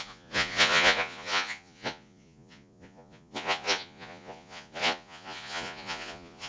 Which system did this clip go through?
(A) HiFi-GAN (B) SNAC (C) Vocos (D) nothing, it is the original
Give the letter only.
C